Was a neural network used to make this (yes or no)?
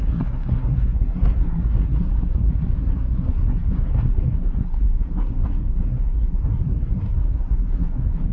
yes